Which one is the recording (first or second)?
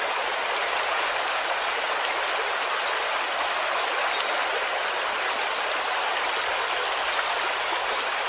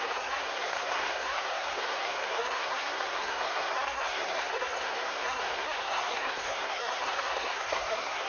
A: first